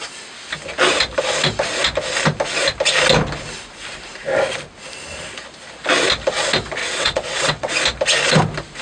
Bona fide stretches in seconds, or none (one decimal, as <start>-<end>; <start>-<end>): 0.0-6.8; 7.7-8.8

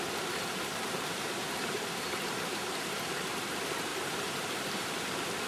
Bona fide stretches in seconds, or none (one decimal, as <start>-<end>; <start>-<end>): 0.0-0.8; 3.5-3.9; 5.0-5.5

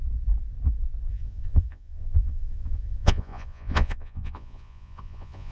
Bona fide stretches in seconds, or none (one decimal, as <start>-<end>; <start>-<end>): 0.0-1.1